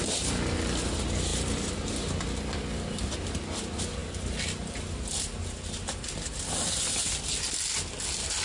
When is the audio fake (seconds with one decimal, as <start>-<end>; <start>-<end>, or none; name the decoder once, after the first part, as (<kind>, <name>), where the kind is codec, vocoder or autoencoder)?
none